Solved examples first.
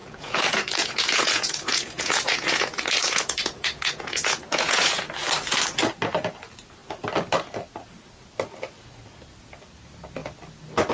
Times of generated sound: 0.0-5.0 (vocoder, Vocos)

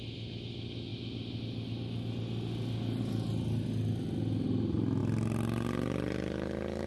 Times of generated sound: none

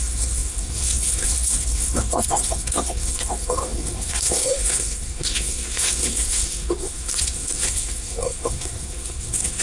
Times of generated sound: 0.0-9.6 (codec, SNAC)

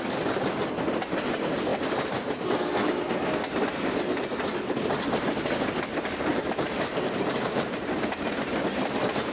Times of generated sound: 6.3-7.9 (vocoder, BigVGAN v2)